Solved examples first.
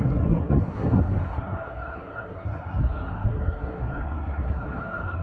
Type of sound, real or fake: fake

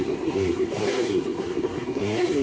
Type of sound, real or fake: fake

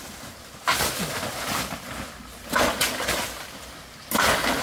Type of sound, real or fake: real